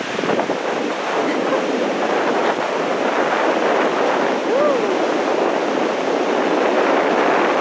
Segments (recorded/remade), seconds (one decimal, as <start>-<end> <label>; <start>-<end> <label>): 0.0-1.5 recorded; 1.5-2.9 remade; 2.9-7.6 recorded